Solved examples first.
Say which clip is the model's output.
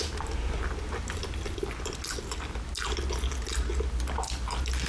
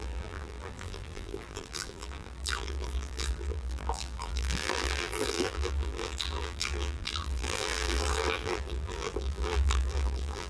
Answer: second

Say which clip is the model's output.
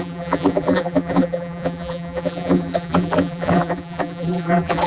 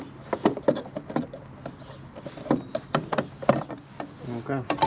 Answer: first